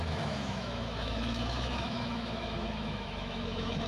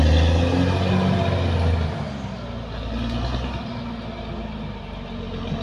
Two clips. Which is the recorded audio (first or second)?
second